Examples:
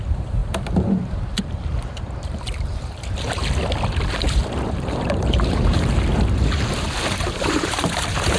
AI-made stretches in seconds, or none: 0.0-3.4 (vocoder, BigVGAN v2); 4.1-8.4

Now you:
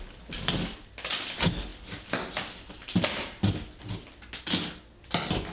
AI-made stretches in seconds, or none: none

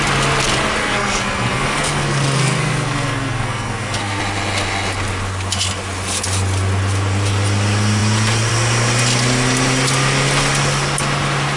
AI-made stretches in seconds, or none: 0.8-4.2 (codec, SNAC)

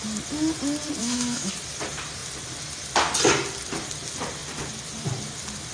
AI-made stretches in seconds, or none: 1.0-1.5 (autoencoder, DAC-VAE)

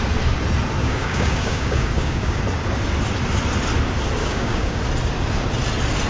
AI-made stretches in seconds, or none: 0.8-2.4 (codec, DAC); 4.2-4.8

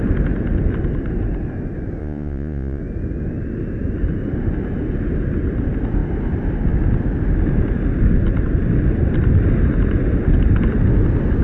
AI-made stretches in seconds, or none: 2.0-2.8 (vocoder, Vocos)